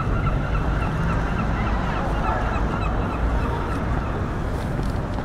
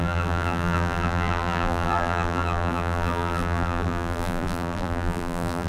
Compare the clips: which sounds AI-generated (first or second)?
second